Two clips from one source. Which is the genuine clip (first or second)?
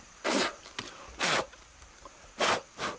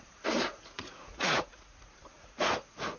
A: first